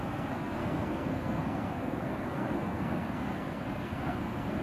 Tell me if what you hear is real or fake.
fake